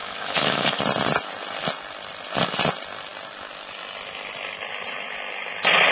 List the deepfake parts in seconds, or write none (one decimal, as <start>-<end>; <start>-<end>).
0.0-0.8